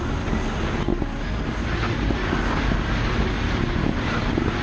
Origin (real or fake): real